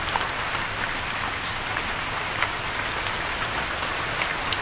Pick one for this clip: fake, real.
real